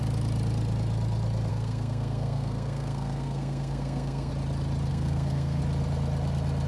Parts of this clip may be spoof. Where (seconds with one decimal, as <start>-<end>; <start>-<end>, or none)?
1.5-4.3; 4.9-5.6